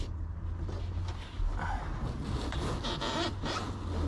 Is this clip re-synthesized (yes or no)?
no